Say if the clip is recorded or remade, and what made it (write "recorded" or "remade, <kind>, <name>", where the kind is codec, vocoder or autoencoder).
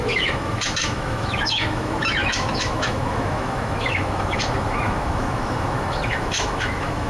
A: remade, autoencoder, DAC-VAE